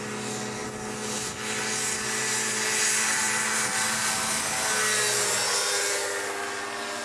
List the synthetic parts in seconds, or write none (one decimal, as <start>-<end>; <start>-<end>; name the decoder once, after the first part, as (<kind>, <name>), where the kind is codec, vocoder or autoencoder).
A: none